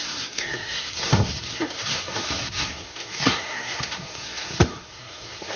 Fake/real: fake